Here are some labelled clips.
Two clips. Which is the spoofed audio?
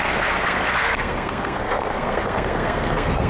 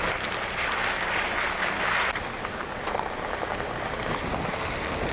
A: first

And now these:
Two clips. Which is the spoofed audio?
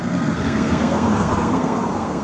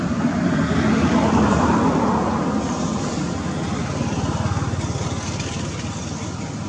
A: first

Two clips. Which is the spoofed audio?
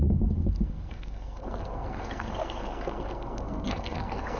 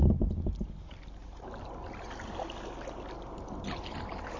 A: first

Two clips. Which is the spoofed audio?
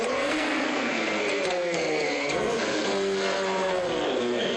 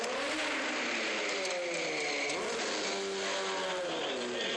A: first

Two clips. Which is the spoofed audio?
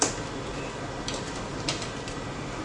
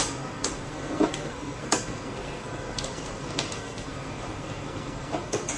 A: second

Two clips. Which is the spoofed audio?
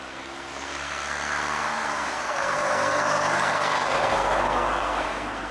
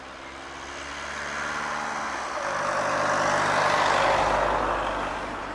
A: first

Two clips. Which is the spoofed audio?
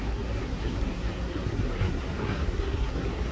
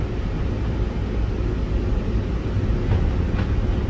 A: first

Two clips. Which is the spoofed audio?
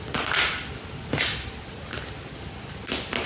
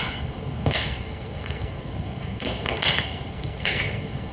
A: second